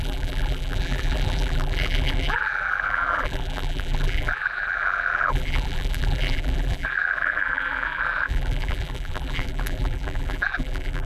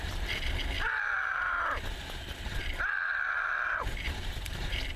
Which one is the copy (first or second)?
first